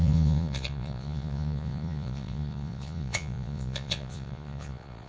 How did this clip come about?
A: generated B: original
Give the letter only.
A